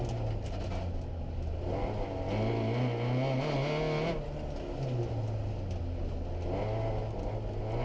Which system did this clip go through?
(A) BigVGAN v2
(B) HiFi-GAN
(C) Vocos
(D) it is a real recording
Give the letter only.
D